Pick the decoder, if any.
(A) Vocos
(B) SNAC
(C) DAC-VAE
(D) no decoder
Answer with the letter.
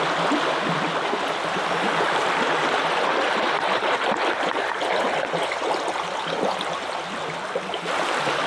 D